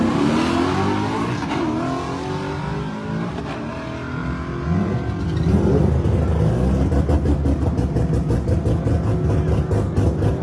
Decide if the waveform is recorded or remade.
recorded